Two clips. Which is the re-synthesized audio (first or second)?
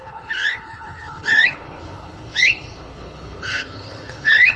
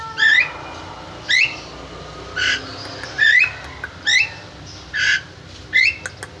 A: first